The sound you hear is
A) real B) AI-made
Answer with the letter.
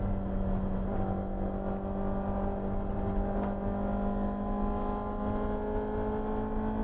A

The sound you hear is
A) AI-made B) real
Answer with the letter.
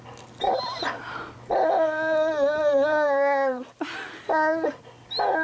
B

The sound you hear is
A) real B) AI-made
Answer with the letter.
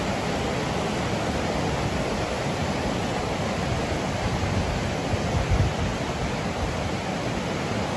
A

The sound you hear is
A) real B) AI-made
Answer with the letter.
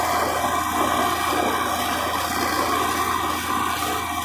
A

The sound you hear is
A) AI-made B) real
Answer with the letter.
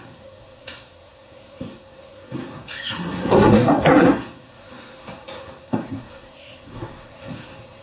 A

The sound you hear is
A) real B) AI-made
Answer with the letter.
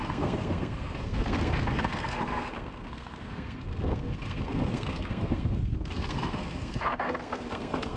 B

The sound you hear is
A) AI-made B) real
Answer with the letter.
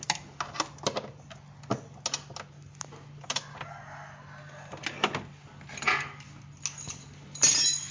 B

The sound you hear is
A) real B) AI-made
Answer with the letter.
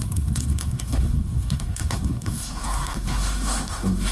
B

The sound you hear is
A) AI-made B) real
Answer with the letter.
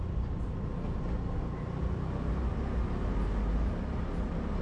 B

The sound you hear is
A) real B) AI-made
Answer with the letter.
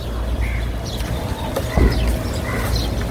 A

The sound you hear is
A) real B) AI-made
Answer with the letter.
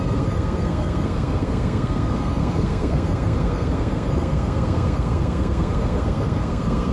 B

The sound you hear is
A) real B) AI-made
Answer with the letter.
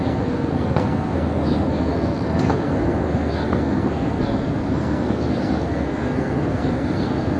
B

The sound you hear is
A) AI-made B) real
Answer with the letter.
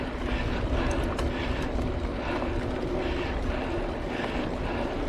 B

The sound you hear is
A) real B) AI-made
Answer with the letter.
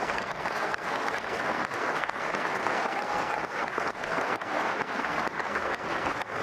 B